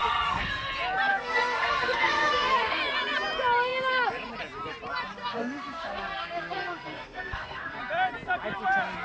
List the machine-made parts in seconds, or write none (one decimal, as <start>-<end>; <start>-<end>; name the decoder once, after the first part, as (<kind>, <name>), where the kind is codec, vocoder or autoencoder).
0.0-0.7 (codec, SNAC); 1.1-2.8; 5.2-7.8